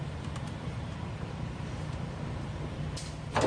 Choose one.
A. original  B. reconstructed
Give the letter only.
B